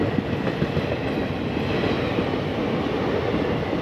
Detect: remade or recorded recorded